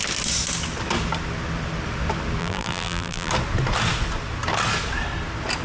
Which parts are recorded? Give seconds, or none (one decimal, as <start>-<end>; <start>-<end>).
0.0-2.4; 3.3-5.6